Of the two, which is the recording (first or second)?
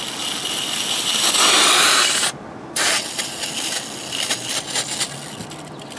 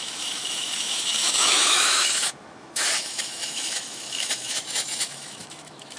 first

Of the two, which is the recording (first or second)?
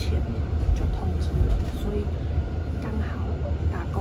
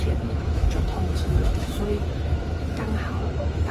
first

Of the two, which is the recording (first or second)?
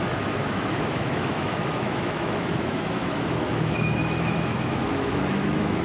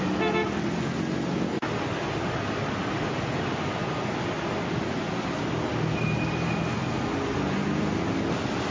second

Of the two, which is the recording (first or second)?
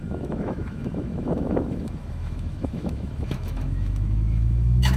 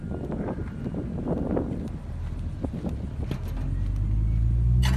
second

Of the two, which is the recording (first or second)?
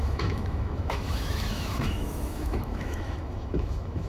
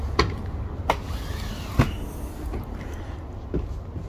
second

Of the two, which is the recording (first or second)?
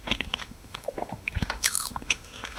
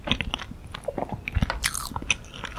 second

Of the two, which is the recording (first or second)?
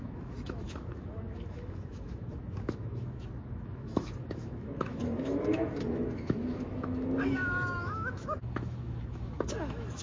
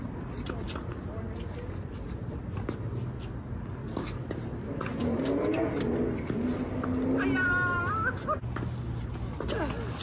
second